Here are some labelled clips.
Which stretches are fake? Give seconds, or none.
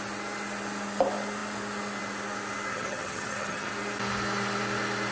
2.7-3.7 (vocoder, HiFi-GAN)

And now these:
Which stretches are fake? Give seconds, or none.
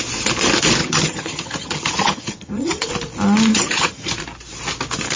0.8-2.9 (vocoder, HiFi-GAN); 3.5-4.1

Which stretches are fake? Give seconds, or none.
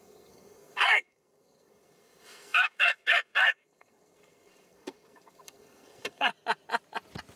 0.0-6.3 (codec, SNAC)